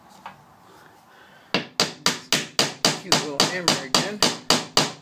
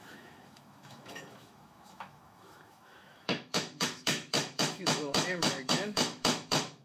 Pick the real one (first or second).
first